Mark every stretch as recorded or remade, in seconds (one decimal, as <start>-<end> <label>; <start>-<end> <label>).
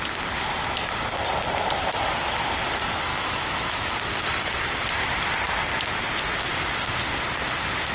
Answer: 0.0-3.1 recorded; 3.1-3.9 remade; 3.9-7.9 recorded